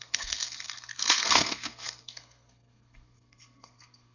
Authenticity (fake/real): fake